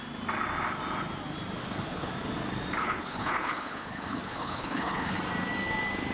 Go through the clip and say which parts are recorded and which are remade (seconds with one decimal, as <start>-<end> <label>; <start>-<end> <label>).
0.0-1.6 recorded; 1.6-2.1 remade; 2.1-2.8 recorded; 2.8-5.2 remade; 5.2-6.1 recorded